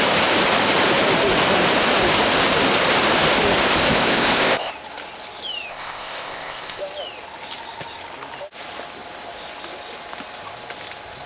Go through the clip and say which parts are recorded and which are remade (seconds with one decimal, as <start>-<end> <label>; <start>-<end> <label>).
0.0-3.9 recorded; 3.9-4.7 remade; 4.7-5.7 recorded; 5.7-6.8 remade; 6.8-11.3 recorded

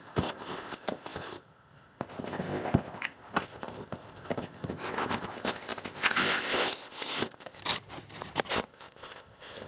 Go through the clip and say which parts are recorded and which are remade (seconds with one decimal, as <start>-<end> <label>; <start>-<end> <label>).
0.0-7.6 remade; 7.6-8.5 recorded; 8.5-9.7 remade

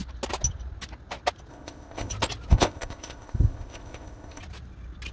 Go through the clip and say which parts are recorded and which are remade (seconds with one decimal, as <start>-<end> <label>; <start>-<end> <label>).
0.0-1.5 recorded; 1.5-2.1 remade; 2.1-2.5 recorded; 2.5-4.4 remade; 4.4-5.1 recorded